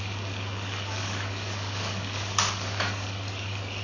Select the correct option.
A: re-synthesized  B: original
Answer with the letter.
A